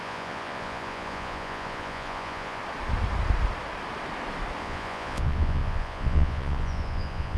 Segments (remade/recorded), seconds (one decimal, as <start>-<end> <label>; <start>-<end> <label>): 0.0-2.6 remade; 2.6-4.6 recorded; 4.6-7.4 remade